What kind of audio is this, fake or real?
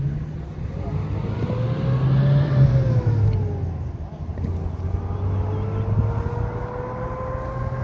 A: real